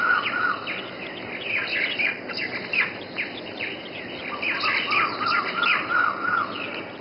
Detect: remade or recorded recorded